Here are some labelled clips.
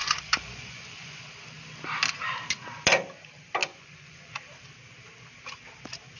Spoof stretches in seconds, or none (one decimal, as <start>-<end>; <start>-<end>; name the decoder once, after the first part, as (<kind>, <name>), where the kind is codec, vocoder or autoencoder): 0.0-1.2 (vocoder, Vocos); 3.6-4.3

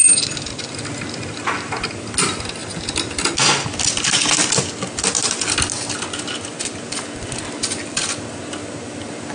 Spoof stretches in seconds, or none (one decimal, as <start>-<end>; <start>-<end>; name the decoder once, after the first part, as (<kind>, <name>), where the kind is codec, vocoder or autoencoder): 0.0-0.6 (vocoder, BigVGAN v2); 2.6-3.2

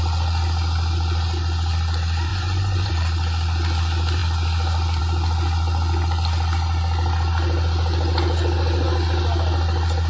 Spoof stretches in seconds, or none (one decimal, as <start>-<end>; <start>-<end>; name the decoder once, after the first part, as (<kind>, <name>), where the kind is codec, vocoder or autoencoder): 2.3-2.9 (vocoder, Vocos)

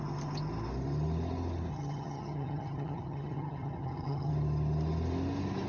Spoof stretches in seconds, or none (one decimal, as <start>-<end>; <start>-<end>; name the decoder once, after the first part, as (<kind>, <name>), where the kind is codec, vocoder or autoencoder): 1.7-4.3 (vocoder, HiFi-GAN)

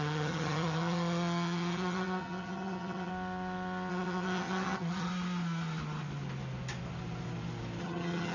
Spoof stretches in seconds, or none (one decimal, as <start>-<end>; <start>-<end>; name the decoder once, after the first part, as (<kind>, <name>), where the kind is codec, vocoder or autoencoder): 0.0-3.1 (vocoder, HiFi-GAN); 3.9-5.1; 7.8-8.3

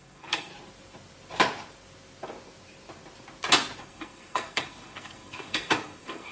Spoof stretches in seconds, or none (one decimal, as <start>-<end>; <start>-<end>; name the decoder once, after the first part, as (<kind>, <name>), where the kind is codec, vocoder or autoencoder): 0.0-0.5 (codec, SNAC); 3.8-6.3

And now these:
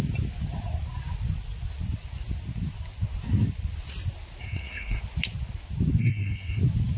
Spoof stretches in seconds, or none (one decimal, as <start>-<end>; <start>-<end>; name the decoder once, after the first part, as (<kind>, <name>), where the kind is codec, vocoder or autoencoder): 4.4-5.0 (codec, SNAC); 6.0-6.6